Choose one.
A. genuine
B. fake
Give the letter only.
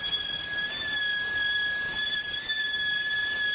A